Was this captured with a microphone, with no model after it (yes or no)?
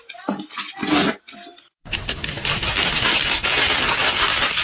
yes